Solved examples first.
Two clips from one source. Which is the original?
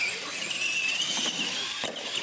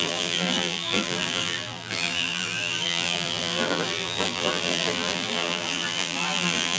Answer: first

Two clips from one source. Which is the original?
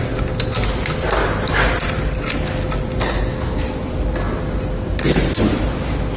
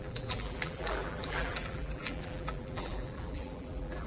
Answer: first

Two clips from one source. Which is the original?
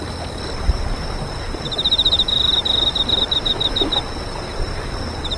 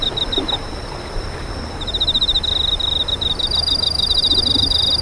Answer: second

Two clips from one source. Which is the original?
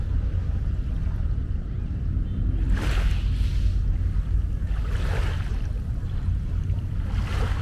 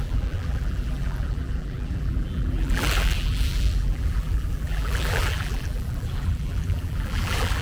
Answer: first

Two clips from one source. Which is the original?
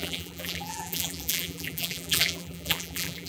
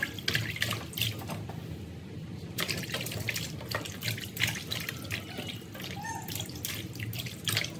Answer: second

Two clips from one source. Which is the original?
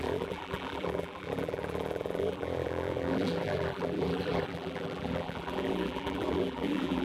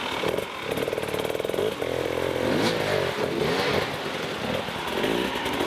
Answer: second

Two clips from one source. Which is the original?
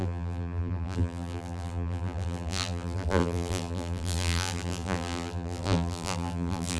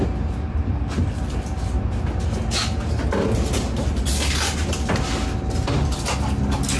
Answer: second